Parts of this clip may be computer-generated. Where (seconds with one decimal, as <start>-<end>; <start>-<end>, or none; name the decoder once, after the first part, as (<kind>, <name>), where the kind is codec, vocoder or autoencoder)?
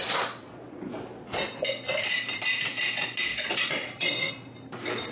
0.0-1.0 (vocoder, Vocos); 3.3-4.3